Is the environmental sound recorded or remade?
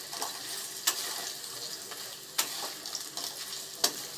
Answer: recorded